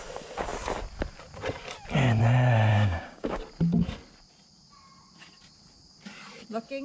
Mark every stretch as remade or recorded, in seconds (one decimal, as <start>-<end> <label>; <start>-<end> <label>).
0.0-2.7 recorded; 2.7-3.4 remade; 3.4-6.8 recorded